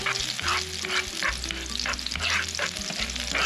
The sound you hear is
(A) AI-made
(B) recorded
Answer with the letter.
B